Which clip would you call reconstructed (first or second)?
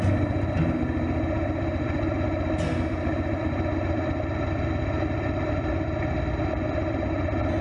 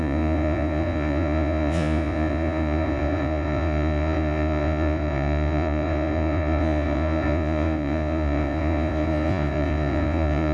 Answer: second